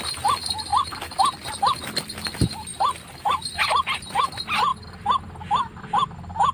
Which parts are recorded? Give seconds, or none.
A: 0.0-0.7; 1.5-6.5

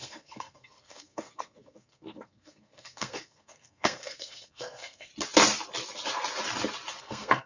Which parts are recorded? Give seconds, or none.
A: 5.1-7.0

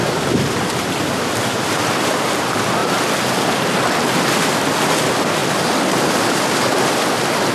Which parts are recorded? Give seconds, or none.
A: 2.8-4.5; 5.4-6.9

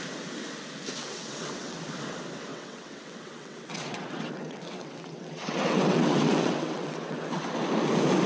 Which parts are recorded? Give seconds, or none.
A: 0.0-1.0; 1.8-2.5; 7.5-8.3